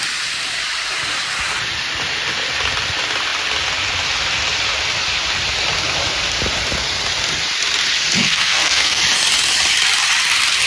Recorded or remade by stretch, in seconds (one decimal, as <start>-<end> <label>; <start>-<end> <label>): 0.0-8.2 recorded; 8.2-9.0 remade; 9.0-10.7 recorded